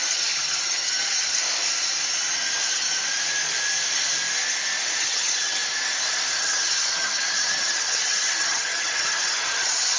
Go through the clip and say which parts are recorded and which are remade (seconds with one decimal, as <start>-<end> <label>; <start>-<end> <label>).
0.0-1.4 remade; 1.4-5.0 recorded; 5.0-5.6 remade; 5.6-6.4 recorded; 6.4-10.0 remade